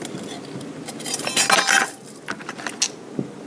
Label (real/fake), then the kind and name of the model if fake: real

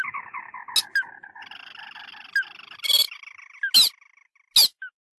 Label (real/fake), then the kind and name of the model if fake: real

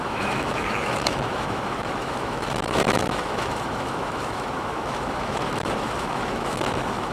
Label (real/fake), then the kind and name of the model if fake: fake, autoencoder, DAC-VAE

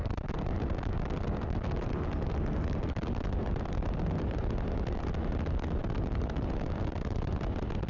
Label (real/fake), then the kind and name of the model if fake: real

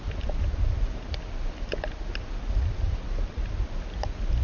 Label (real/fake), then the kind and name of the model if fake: real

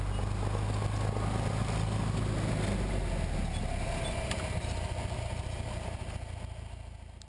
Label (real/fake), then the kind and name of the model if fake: real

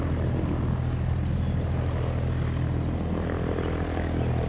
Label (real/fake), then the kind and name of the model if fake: real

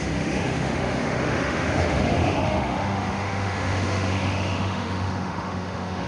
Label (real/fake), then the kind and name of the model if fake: fake, autoencoder, DAC-VAE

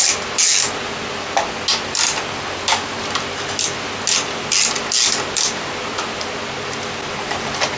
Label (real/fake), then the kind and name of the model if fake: real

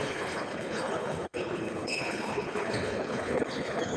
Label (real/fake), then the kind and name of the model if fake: fake, codec, HILCodec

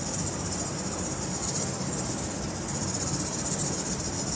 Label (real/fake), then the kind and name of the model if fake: real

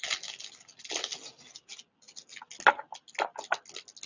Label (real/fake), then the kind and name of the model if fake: real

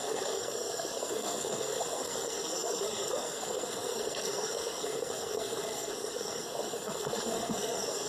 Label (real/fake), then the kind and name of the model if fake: fake, codec, SNAC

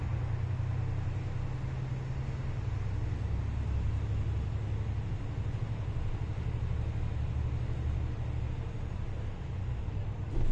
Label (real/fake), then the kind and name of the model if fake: real